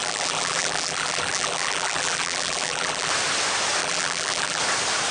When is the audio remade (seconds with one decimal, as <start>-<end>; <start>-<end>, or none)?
0.0-3.1; 3.8-4.6